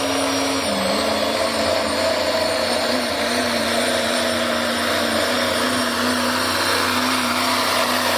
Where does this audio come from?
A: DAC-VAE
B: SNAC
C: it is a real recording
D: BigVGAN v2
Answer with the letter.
C